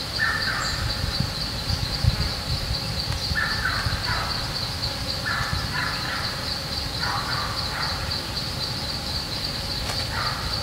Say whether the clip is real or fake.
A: real